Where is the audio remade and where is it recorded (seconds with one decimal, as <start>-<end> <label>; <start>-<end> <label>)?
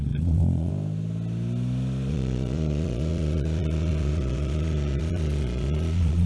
0.0-0.7 remade; 0.7-2.1 recorded; 2.1-6.3 remade